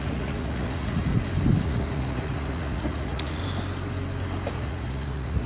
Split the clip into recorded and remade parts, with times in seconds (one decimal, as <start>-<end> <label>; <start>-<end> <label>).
0.0-1.1 remade; 1.1-1.6 recorded; 1.6-3.4 remade; 3.4-4.5 recorded; 4.5-5.5 remade